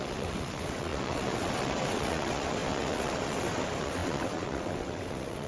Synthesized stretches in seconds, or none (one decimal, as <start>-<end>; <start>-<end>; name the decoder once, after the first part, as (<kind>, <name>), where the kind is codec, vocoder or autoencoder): 0.0-5.5 (vocoder, WaveNeXt)